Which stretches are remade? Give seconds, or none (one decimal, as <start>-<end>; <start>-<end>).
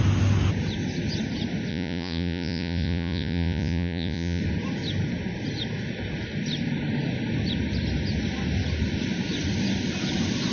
1.7-4.4